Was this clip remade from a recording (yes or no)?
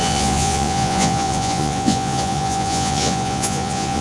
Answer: yes